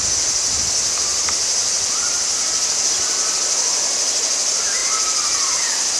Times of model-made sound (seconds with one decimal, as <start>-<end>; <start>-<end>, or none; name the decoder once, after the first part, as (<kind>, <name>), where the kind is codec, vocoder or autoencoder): 1.6-3.0 (vocoder, BigVGAN v2); 4.8-5.5